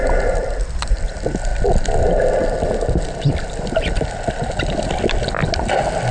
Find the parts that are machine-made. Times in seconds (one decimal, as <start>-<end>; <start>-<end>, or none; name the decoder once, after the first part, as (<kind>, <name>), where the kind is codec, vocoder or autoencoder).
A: 0.0-1.0 (vocoder, BigVGAN v2)